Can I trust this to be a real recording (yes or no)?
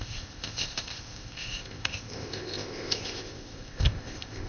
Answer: no